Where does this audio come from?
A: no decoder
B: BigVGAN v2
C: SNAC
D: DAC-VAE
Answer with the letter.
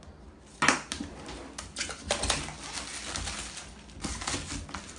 A